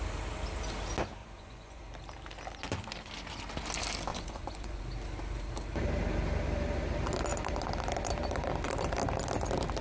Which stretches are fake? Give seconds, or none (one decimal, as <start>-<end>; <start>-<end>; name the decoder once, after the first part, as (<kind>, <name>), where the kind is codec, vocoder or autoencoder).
1.2-1.8 (vocoder, Vocos); 4.1-4.8